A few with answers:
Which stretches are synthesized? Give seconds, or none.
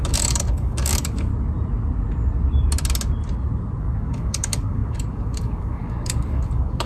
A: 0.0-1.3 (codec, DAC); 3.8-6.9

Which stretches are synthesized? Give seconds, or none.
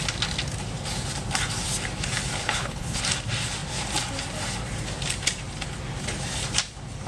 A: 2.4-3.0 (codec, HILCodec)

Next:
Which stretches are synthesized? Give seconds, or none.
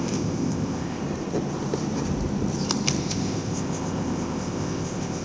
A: 0.0-1.0 (codec, ZipCodec); 3.0-5.2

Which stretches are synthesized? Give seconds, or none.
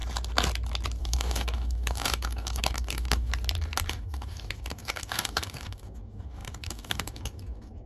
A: 1.0-3.3 (codec, DAC); 3.9-7.9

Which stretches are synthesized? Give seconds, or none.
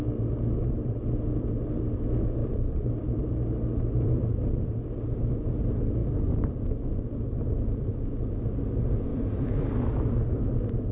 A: 2.4-3.4 (vocoder, BigVGAN v2); 9.1-10.2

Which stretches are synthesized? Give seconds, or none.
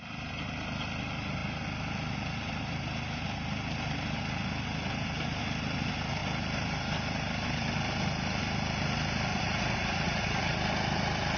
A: 9.3-10.6 (vocoder, Vocos)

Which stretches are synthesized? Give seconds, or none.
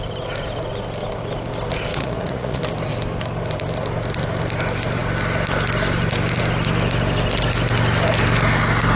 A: 1.9-2.6 (vocoder, Vocos)